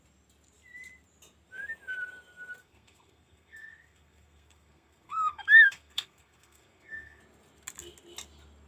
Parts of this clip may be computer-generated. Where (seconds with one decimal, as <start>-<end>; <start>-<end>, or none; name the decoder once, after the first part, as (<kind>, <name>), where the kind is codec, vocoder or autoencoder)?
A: 2.6-7.2 (codec, SNAC)